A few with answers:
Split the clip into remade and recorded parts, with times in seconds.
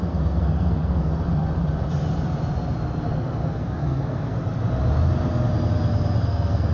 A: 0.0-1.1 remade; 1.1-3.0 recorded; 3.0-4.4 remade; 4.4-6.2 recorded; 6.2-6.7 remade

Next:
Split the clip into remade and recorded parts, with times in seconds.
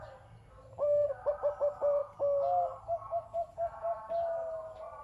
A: 0.0-5.0 recorded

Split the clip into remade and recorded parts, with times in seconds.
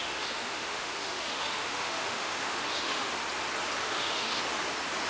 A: 0.0-3.1 remade; 3.1-3.8 recorded; 3.8-4.4 remade; 4.4-5.1 recorded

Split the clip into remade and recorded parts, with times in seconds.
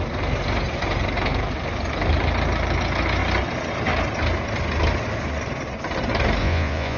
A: 0.0-6.4 recorded; 6.4-7.0 remade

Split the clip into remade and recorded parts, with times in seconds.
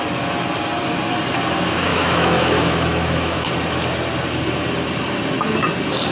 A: 0.0-1.9 recorded; 1.9-3.5 remade; 3.5-6.1 recorded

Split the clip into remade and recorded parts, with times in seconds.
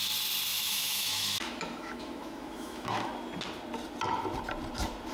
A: 0.0-0.5 recorded; 0.5-3.1 remade; 3.1-5.1 recorded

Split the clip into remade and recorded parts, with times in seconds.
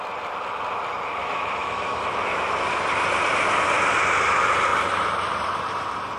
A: 0.0-1.2 recorded; 1.2-2.4 remade; 2.4-6.2 recorded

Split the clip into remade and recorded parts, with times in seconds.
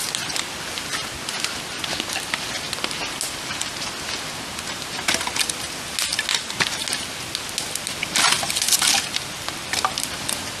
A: 0.0-10.6 recorded